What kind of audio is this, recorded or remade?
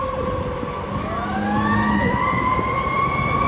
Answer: recorded